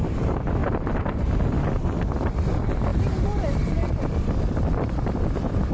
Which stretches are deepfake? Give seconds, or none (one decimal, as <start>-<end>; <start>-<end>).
0.6-1.3; 2.9-3.9